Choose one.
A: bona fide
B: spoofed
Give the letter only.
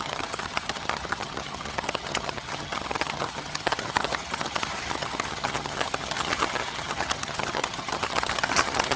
B